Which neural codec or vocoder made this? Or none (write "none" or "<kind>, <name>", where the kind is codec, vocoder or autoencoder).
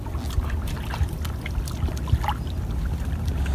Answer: none